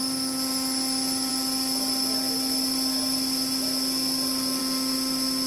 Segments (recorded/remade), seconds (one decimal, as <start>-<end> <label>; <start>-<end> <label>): 0.0-5.5 recorded